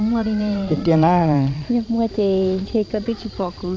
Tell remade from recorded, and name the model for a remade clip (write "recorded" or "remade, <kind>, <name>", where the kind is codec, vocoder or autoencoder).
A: remade, vocoder, Vocos